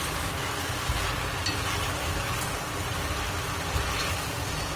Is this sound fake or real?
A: real